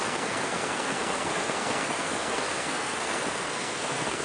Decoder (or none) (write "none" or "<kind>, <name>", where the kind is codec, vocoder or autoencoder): codec, SNAC